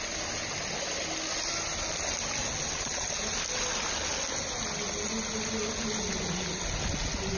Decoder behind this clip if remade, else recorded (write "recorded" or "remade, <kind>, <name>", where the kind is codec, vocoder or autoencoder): recorded